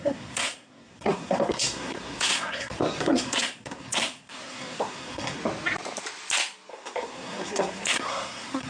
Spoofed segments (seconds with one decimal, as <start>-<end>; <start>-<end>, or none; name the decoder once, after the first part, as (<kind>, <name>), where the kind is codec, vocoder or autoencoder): 0.0-5.4 (codec, SNAC); 6.7-8.7